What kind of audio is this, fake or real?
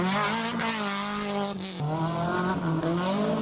real